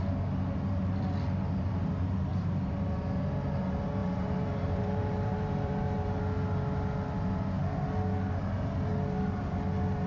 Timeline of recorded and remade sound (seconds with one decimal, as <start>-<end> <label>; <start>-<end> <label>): 0.0-2.3 recorded; 2.3-2.8 remade; 2.8-4.0 recorded; 4.0-6.2 remade; 6.2-10.1 recorded